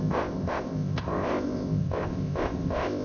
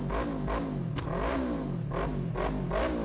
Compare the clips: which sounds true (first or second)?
second